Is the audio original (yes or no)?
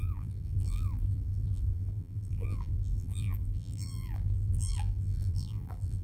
no